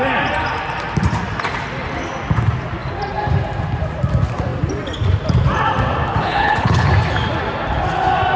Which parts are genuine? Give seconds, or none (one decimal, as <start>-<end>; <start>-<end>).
0.0-6.1; 6.9-8.4